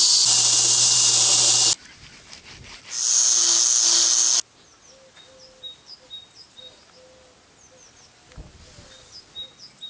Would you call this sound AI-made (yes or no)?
no